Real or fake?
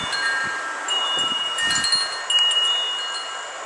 real